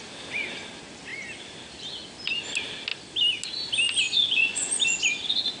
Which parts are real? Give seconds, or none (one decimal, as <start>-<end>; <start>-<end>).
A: 0.0-4.1; 4.7-5.6